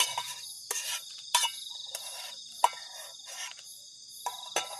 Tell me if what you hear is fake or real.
real